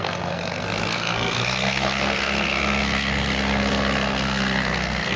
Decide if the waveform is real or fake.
fake